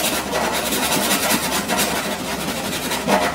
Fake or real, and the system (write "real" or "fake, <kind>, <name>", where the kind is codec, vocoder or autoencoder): real